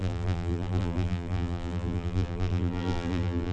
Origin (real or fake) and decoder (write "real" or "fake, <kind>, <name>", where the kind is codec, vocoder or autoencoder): fake, vocoder, BigVGAN v2